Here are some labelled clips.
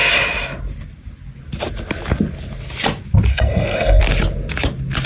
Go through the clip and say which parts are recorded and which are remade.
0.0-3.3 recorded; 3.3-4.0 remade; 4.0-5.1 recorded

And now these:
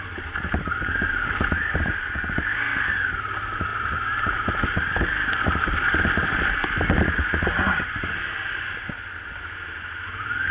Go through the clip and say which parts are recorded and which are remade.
0.0-10.5 recorded

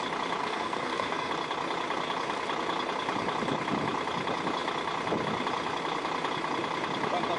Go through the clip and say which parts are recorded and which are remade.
0.0-0.4 recorded; 0.4-1.3 remade; 1.3-7.4 recorded

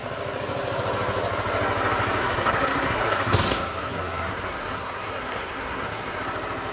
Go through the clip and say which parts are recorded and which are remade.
0.0-2.2 recorded; 2.2-6.2 remade; 6.2-6.7 recorded

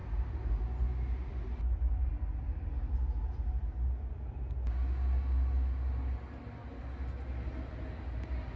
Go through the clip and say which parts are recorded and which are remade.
0.0-8.6 recorded

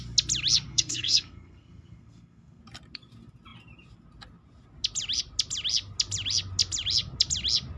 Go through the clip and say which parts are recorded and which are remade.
0.0-0.7 recorded; 0.7-2.6 remade; 2.6-7.8 recorded

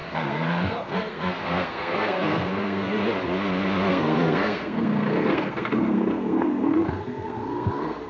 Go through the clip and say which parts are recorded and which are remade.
0.0-3.0 remade; 3.0-3.9 recorded; 3.9-8.1 remade

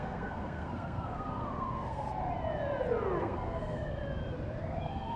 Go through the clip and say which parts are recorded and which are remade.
0.0-2.2 remade; 2.2-3.2 recorded; 3.2-4.0 remade; 4.0-4.6 recorded; 4.6-5.2 remade